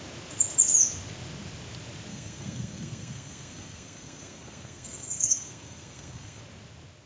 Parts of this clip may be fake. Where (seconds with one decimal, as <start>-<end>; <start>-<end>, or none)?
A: 2.1-6.4